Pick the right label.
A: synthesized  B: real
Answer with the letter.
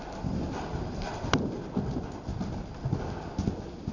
B